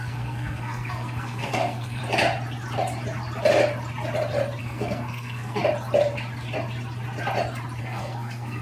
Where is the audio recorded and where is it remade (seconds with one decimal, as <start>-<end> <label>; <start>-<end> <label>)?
0.0-2.0 remade; 2.0-4.6 recorded; 4.6-5.6 remade; 5.6-7.8 recorded; 7.8-8.6 remade